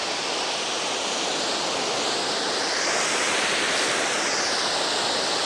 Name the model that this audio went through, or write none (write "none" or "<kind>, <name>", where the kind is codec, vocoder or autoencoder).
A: none